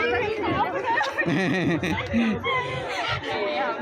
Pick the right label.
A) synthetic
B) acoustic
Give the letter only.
B